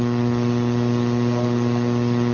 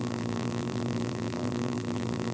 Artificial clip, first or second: second